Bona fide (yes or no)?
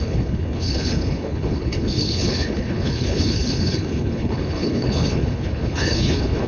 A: no